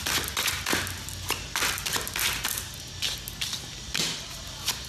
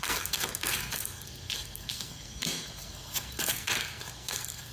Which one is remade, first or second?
second